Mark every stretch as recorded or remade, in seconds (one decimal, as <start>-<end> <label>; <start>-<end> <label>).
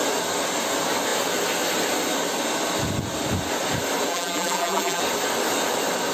0.0-4.1 recorded; 4.1-5.0 remade; 5.0-6.1 recorded